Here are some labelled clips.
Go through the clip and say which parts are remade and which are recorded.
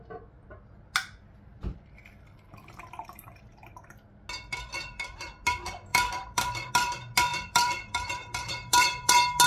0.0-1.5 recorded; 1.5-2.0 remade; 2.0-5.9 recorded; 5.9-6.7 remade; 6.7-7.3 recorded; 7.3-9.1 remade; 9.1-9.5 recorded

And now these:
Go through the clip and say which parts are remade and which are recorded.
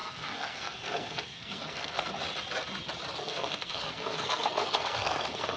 0.0-2.1 remade; 2.1-3.2 recorded; 3.2-5.6 remade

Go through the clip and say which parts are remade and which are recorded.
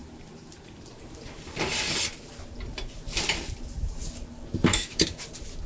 0.0-4.7 recorded; 4.7-5.2 remade; 5.2-5.7 recorded